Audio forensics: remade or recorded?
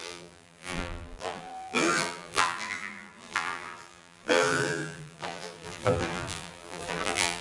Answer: remade